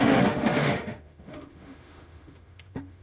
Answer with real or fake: fake